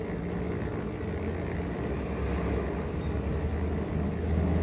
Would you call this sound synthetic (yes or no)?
no